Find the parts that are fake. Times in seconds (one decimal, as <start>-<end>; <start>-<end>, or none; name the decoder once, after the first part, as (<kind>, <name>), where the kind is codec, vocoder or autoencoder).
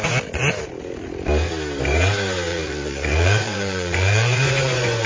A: 2.5-5.1 (vocoder, Vocos)